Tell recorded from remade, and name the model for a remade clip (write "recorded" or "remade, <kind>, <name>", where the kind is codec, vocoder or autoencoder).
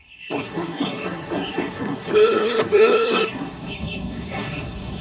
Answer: remade, codec, SNAC